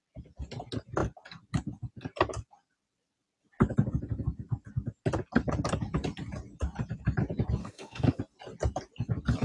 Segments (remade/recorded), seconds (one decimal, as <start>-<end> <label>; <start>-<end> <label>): 0.0-7.6 recorded; 7.6-8.2 remade; 8.2-9.4 recorded